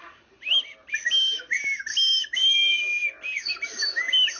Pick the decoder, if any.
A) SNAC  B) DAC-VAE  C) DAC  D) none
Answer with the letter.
D